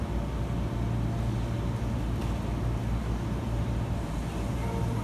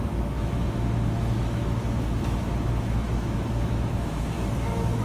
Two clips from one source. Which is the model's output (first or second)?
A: second